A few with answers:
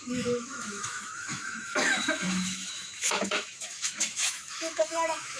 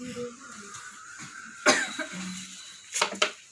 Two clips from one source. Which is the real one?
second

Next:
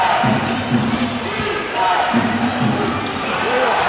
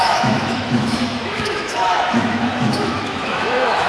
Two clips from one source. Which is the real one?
first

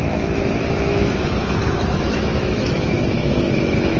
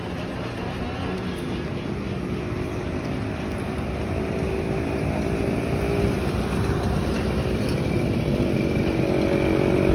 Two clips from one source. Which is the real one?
second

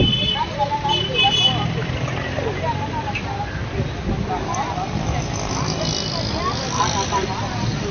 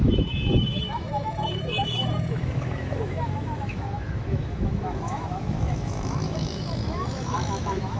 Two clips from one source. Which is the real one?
first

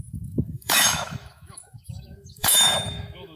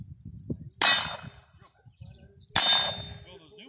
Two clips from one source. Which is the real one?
second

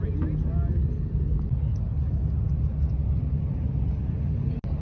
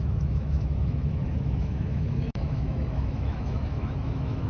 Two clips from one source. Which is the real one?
first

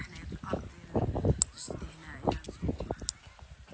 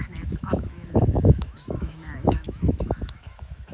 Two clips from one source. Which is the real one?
first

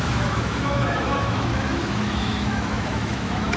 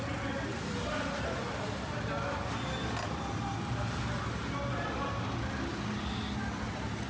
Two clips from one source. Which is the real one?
second